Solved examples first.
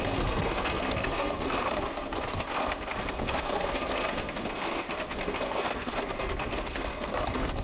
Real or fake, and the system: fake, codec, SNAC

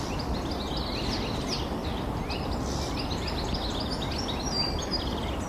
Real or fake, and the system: real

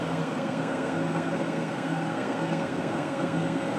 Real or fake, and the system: fake, codec, SNAC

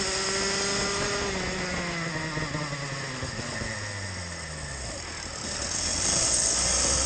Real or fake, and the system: real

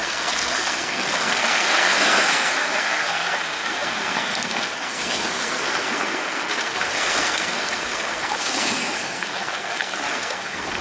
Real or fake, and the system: fake, codec, SNAC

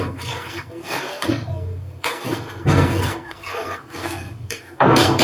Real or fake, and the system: fake, codec, SNAC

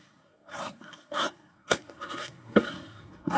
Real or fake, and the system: fake, codec, SNAC